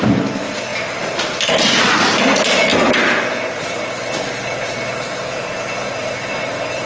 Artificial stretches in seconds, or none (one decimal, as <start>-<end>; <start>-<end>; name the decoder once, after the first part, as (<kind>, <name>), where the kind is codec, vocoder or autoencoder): none